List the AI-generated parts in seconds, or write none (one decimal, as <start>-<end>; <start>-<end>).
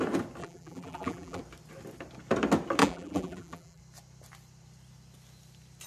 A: 0.4-1.4; 2.8-3.8